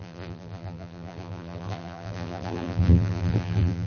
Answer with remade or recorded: remade